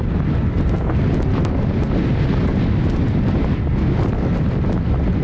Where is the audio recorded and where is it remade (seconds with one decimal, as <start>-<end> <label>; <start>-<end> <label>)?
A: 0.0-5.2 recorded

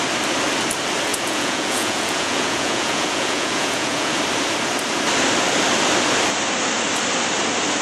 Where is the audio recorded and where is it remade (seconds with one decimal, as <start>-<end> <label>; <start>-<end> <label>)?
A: 0.0-1.1 recorded; 1.1-4.2 remade; 4.2-7.8 recorded

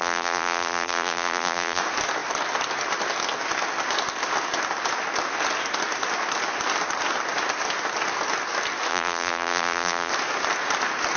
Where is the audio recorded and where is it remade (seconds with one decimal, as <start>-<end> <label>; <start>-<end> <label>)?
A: 0.0-1.8 remade; 1.8-8.9 recorded; 8.9-10.1 remade; 10.1-11.2 recorded

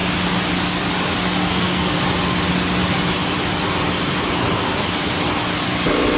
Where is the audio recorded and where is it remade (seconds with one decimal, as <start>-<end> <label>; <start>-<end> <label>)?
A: 0.0-1.4 recorded; 1.4-2.0 remade; 2.0-6.2 recorded

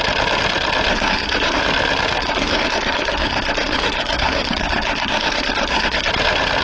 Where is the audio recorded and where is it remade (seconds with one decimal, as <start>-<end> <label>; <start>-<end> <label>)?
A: 0.0-0.9 recorded; 0.9-1.6 remade; 1.6-2.2 recorded; 2.2-6.1 remade; 6.1-6.6 recorded